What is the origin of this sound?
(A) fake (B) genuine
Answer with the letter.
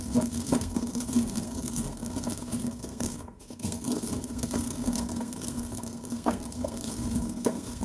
A